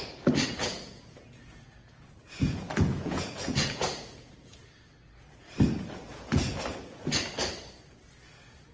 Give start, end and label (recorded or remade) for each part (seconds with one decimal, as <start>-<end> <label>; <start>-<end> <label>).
0.0-0.6 recorded; 0.6-4.6 remade; 4.6-6.1 recorded; 6.1-6.6 remade; 6.6-8.7 recorded